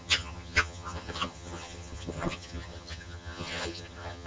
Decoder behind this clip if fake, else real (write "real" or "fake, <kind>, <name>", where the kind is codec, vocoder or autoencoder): fake, vocoder, HiFi-GAN